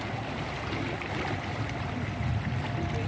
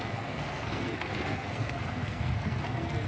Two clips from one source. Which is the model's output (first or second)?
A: second